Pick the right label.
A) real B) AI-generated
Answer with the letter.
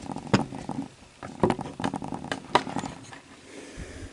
A